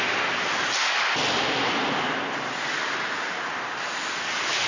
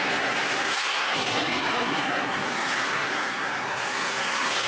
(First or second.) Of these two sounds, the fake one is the second